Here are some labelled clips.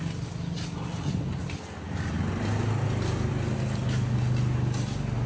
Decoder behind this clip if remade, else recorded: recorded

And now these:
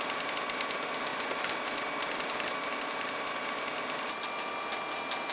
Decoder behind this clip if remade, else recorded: recorded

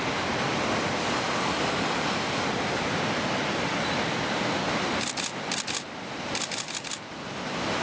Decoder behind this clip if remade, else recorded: recorded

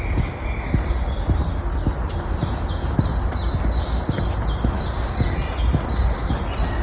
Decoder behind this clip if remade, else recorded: recorded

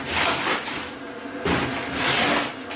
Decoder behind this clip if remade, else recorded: recorded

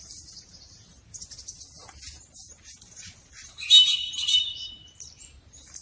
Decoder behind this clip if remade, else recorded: recorded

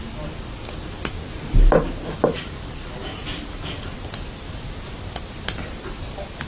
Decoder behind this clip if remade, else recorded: recorded